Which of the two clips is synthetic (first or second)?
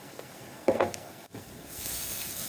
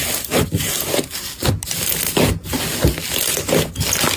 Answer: first